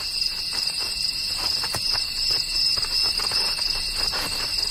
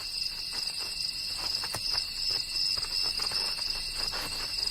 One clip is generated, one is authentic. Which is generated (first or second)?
first